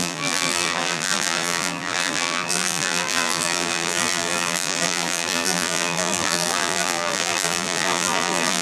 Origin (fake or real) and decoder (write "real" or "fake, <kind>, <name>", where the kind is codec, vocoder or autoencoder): fake, vocoder, BigVGAN v2